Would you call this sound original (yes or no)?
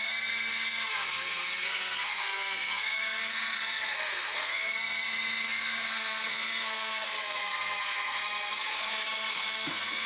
no